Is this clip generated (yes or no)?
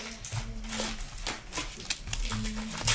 no